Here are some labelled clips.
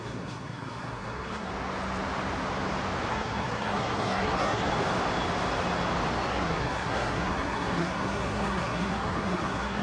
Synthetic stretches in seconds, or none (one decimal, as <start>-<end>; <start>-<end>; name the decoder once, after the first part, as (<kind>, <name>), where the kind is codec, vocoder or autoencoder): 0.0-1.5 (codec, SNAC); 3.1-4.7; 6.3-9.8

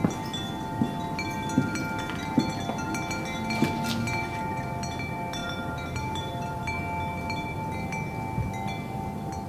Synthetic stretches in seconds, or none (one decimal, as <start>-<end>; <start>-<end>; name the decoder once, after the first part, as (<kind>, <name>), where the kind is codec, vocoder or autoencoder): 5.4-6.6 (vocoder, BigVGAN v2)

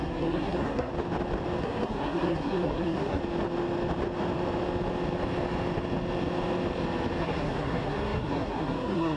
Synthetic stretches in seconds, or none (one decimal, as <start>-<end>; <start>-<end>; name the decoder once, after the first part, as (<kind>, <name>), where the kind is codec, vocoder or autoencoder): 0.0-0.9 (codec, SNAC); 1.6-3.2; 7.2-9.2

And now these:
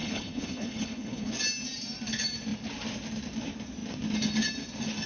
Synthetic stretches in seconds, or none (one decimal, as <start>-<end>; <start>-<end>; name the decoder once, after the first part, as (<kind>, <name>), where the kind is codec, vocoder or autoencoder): 0.0-1.3 (codec, HILCodec)